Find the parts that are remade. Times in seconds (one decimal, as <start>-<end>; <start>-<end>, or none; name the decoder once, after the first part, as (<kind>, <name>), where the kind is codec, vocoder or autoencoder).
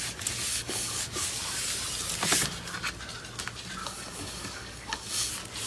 0.5-1.0 (codec, DAC); 3.8-5.3